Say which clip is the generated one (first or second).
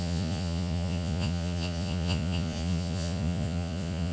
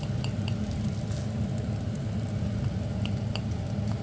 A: first